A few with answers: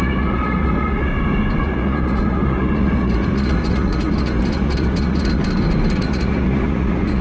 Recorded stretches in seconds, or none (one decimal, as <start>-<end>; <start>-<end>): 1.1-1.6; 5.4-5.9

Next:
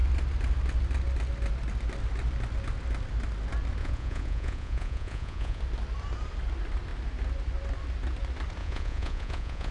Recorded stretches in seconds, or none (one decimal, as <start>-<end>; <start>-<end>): 0.0-3.8; 5.6-8.6

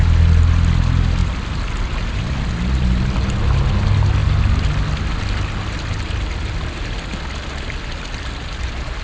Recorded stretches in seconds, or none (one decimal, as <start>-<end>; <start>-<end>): 0.0-9.0

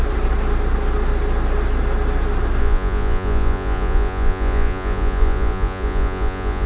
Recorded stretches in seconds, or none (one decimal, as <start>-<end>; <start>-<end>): 0.0-2.6